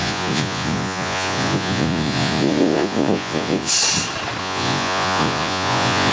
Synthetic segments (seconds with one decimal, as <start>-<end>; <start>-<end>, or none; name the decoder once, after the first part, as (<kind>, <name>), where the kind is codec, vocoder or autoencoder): 0.0-3.7 (vocoder, Vocos); 4.4-6.1